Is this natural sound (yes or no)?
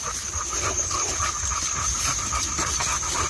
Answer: yes